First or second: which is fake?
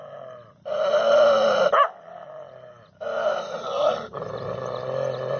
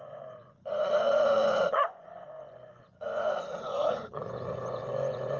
second